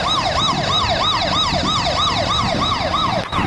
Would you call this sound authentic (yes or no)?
yes